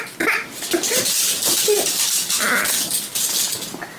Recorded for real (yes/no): yes